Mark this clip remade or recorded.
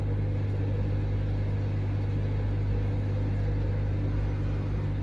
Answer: recorded